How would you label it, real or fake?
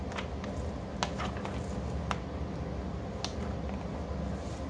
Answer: real